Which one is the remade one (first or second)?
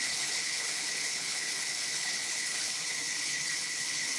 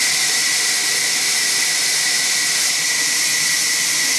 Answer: first